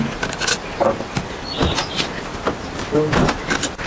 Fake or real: real